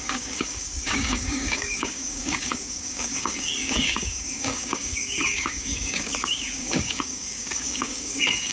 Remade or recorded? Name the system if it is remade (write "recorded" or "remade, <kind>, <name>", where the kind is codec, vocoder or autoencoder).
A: remade, codec, DAC